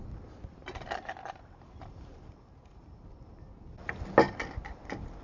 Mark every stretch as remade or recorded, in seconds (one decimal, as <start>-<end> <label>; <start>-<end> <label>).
0.0-0.6 recorded; 0.6-3.7 remade; 3.7-5.2 recorded